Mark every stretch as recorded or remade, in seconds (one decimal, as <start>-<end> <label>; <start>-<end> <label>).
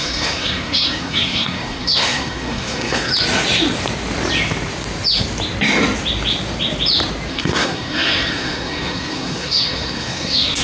0.0-3.1 remade; 3.1-7.3 recorded; 7.3-10.6 remade